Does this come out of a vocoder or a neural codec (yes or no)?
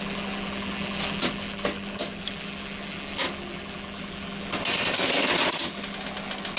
no